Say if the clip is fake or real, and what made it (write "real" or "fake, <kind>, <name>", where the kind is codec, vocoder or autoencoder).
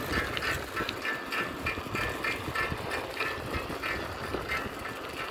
real